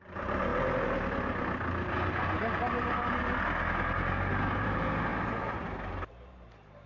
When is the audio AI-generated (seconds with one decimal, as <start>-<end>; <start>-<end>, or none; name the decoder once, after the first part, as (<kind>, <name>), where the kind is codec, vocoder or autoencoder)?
0.0-0.5 (vocoder, BigVGAN v2); 4.3-5.1; 6.1-6.9